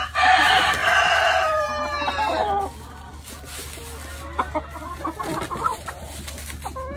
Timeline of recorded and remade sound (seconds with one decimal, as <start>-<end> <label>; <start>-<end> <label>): 0.0-0.8 recorded; 0.8-1.8 remade; 1.8-5.7 recorded; 5.7-6.2 remade; 6.2-7.0 recorded